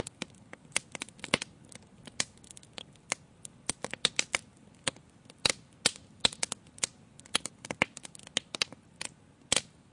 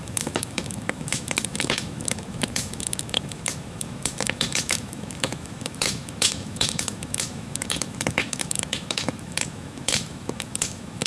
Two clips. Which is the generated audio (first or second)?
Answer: second